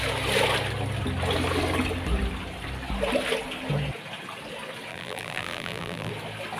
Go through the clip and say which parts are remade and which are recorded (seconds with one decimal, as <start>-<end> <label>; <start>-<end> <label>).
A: 0.0-4.9 recorded; 4.9-6.1 remade; 6.1-6.6 recorded